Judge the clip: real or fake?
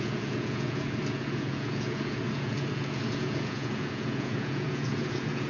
fake